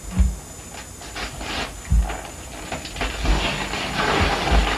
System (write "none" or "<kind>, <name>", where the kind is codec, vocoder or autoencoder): none